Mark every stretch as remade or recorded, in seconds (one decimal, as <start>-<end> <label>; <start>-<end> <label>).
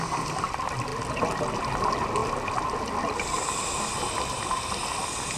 0.0-5.4 recorded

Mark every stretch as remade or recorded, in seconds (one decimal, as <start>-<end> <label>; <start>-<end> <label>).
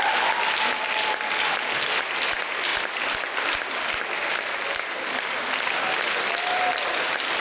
0.0-7.4 recorded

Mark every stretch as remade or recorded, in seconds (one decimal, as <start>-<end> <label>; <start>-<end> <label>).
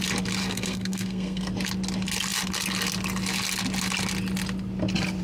0.0-0.4 recorded; 0.4-1.5 remade; 1.5-5.2 recorded